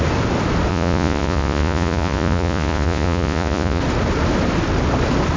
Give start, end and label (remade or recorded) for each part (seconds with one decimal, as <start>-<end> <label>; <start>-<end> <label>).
0.0-0.7 recorded; 0.7-3.8 remade; 3.8-5.4 recorded